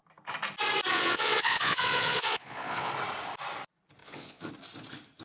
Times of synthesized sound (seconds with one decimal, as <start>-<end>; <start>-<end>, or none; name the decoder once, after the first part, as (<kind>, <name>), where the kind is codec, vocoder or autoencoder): 0.9-2.9 (vocoder, Vocos); 4.0-4.5